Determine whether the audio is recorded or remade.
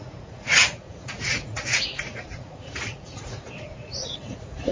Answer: remade